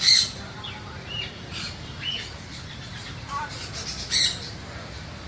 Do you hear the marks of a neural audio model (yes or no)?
yes